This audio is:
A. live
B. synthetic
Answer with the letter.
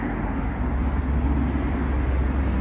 A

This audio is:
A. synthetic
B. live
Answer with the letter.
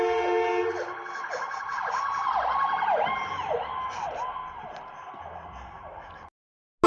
B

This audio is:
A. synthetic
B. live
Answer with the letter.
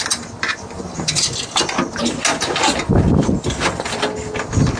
B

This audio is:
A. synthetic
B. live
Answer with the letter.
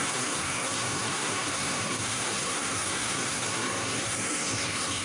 A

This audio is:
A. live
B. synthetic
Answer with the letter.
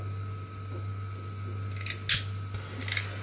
A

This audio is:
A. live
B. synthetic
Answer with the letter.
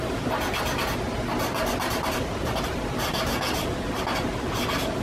A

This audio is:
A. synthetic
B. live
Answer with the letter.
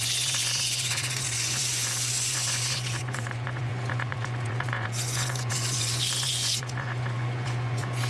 A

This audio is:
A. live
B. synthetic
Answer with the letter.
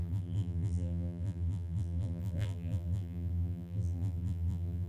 B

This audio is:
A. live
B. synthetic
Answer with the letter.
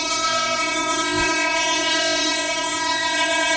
B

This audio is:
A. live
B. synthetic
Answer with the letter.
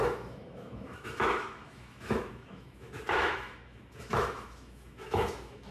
B